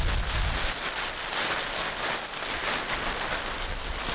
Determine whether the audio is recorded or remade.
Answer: recorded